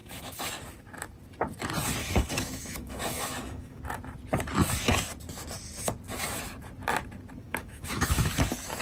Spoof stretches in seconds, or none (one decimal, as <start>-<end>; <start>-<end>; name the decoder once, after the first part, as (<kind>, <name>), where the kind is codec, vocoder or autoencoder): 0.0-0.5 (autoencoder, DAC-VAE); 2.0-3.8; 7.4-8.3

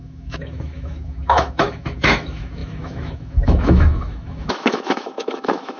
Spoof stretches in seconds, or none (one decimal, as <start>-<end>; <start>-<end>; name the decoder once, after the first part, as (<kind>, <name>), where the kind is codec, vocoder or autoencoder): 0.0-5.8 (autoencoder, DAC-VAE)

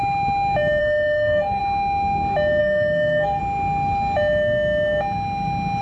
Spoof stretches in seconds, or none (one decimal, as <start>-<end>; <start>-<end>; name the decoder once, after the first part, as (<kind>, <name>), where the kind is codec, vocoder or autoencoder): 0.8-1.6 (codec, SNAC); 2.6-3.4

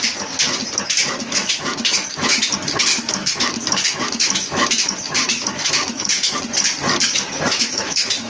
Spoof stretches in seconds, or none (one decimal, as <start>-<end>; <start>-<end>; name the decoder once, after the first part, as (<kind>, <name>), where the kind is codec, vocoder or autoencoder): 1.0-2.4 (autoencoder, DAC-VAE); 2.9-6.4; 7.5-8.3

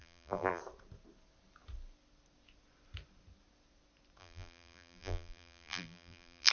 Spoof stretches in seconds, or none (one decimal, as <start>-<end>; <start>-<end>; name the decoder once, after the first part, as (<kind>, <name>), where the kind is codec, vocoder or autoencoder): 0.0-0.6 (vocoder, BigVGAN v2); 4.2-6.5

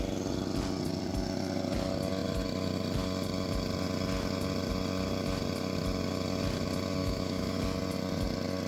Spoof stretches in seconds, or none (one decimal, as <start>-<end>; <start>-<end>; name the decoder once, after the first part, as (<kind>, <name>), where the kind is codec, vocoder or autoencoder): 7.0-7.6 (autoencoder, DAC-VAE)

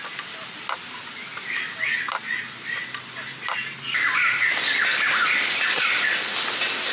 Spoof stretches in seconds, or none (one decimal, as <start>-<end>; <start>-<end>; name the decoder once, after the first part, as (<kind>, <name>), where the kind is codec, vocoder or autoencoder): none